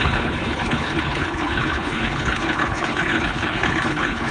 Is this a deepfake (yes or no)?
yes